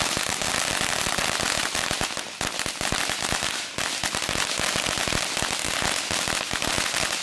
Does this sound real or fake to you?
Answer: real